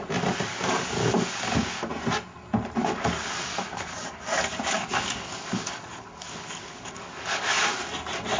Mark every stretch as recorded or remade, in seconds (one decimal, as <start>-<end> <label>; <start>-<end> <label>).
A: 0.0-0.5 recorded; 0.5-1.9 remade; 1.9-2.8 recorded; 2.8-7.8 remade; 7.8-8.4 recorded